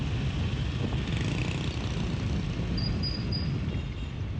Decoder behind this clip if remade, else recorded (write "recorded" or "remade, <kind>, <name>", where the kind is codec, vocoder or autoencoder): recorded